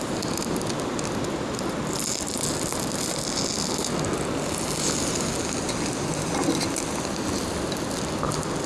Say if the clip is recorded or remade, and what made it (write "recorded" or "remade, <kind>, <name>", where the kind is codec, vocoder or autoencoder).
recorded